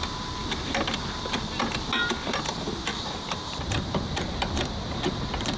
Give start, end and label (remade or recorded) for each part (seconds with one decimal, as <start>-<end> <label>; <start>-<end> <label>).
0.0-2.9 recorded; 2.9-5.6 remade